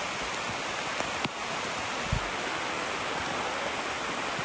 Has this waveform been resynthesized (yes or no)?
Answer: no